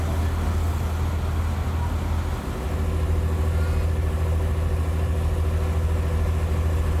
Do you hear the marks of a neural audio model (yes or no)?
no